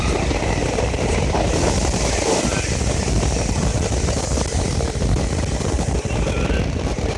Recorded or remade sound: recorded